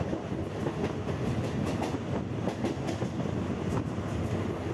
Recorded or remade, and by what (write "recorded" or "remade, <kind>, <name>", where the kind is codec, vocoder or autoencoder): recorded